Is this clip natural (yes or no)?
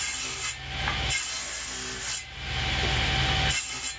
yes